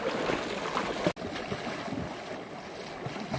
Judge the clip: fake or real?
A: real